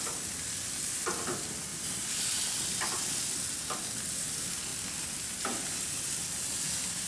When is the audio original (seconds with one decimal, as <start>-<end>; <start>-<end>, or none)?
0.0-1.7; 2.9-4.7; 5.6-7.1